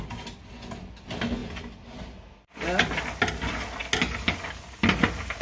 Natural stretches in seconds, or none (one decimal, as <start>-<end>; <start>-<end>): 0.0-5.4